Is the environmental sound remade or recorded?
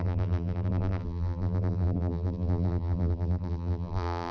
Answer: remade